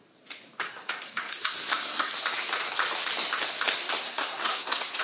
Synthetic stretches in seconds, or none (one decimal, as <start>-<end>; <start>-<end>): 0.6-2.1; 4.0-5.0